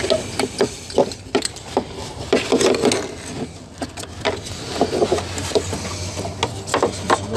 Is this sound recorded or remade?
recorded